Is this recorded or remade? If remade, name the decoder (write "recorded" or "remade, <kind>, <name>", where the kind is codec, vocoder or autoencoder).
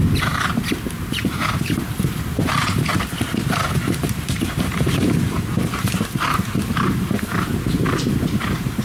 remade, vocoder, BigVGAN v2